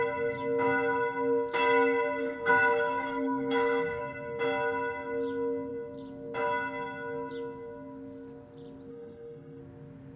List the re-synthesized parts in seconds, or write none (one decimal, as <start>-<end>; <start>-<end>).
2.2-4.0; 8.9-9.6